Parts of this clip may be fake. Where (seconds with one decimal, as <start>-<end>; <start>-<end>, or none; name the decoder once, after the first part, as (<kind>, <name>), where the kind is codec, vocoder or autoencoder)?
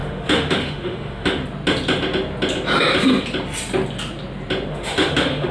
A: 0.0-1.4 (autoencoder, DAC-VAE); 4.7-5.5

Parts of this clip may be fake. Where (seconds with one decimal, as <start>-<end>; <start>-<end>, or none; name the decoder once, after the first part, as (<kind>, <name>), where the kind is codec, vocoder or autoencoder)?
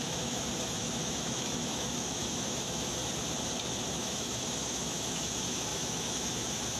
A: 0.0-3.0 (autoencoder, DAC-VAE); 3.9-6.8